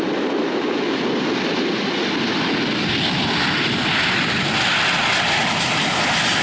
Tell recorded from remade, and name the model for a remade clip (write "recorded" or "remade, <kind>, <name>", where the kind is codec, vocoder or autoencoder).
recorded